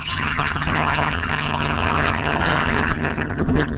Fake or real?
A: fake